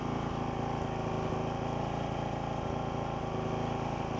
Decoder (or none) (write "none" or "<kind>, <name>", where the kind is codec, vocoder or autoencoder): none